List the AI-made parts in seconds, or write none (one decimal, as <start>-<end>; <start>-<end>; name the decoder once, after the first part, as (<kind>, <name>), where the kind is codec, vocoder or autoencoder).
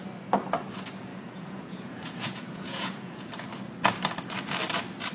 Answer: 1.1-3.4 (vocoder, Vocos)